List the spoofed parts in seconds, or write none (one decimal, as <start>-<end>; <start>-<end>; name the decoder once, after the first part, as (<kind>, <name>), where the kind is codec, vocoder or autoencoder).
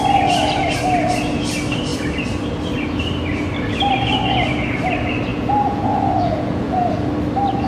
5.3-7.1 (vocoder, Vocos)